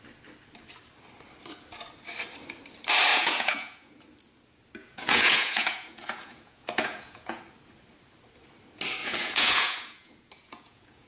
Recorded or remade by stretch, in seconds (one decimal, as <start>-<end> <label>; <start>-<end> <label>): 0.0-3.1 recorded; 3.1-4.0 remade; 4.0-4.8 recorded; 4.8-7.4 remade; 7.4-9.0 recorded; 9.0-11.1 remade